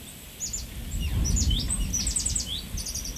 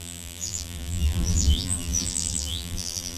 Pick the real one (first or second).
first